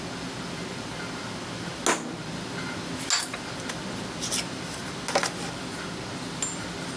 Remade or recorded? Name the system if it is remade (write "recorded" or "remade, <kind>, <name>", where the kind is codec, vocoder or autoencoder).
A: recorded